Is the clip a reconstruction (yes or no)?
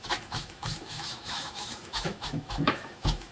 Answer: yes